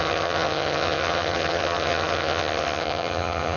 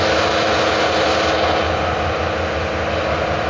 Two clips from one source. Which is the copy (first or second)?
first